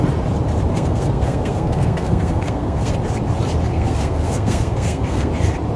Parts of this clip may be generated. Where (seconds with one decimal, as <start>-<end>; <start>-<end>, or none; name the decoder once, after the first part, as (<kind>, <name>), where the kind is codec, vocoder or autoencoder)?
0.7-2.9 (codec, SNAC); 3.7-5.3